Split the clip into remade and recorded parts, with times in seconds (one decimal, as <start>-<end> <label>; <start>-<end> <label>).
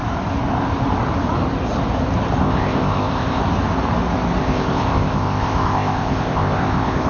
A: 0.0-2.4 recorded; 2.4-3.4 remade; 3.4-4.4 recorded; 4.4-7.1 remade